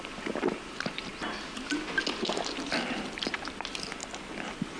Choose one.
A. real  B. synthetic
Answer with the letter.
A